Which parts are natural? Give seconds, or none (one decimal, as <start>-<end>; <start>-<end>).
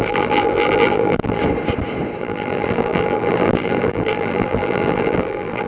1.4-2.2